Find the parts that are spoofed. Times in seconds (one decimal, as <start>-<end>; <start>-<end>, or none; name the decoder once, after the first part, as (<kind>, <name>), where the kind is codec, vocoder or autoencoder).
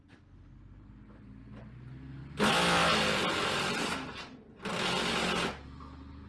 none